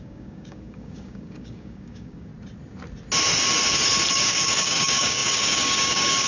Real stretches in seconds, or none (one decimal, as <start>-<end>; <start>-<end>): 2.3-4.1